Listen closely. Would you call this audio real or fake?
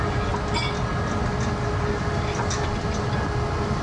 real